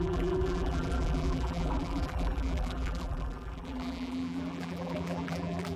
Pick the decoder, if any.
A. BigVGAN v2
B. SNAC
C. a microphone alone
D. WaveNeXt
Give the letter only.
A